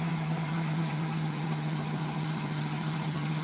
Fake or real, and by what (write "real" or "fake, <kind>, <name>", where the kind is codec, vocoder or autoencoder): fake, vocoder, HiFi-GAN